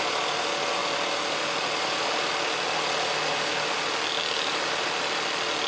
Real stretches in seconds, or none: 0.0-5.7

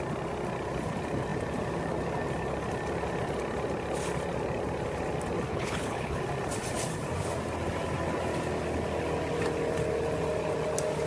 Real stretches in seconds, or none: 0.0-5.5; 6.2-11.1

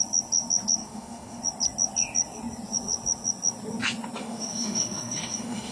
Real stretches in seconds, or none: 0.0-0.8; 1.4-4.2

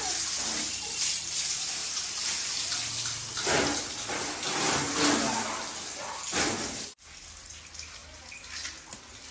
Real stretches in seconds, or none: 0.0-9.3

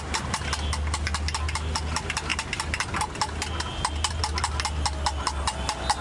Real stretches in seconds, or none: 0.0-6.0

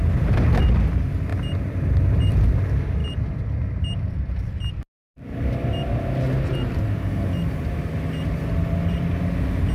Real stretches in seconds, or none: 0.0-9.7

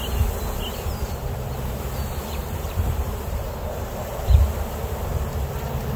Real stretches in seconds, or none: 0.0-2.4; 3.5-6.0

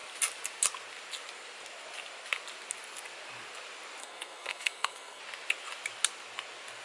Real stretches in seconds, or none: 0.0-4.0; 5.2-6.8